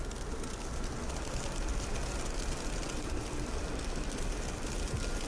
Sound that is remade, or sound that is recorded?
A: recorded